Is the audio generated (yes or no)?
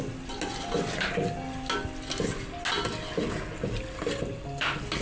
no